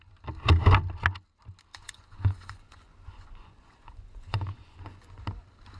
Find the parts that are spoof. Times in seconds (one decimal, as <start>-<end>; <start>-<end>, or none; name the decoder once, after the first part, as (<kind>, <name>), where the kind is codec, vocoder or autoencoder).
1.7-5.2 (vocoder, Vocos)